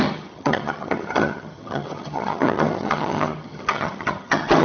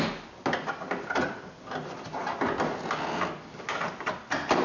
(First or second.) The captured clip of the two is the second